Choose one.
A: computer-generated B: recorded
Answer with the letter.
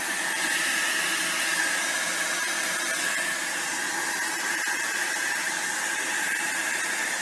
B